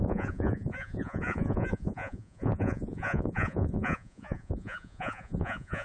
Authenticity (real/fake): fake